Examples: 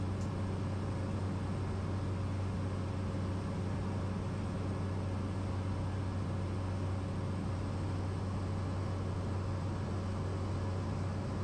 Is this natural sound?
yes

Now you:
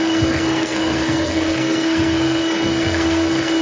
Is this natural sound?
no